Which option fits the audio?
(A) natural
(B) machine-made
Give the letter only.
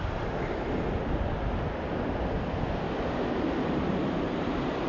A